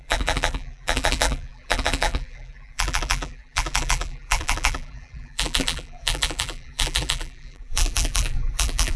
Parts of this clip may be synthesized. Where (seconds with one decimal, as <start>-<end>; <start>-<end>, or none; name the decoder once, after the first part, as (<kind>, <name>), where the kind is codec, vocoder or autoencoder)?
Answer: 0.0-9.0 (vocoder, BigVGAN v2)